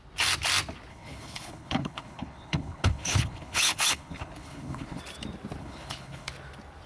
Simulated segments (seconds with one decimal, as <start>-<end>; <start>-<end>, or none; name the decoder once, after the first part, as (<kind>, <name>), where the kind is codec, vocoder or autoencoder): 0.9-5.0 (codec, HILCodec); 5.6-6.3